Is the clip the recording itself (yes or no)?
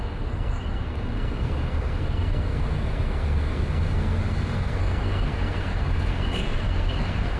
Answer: no